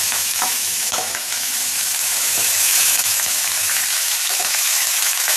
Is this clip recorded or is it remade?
remade